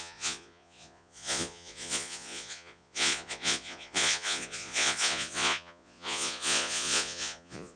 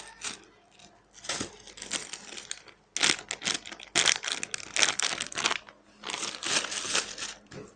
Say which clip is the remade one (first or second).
first